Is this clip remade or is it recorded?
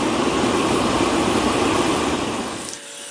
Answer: recorded